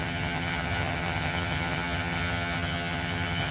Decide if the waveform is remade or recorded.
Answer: remade